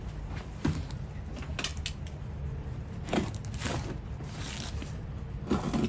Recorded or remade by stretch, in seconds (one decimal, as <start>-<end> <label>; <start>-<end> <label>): 0.0-5.9 recorded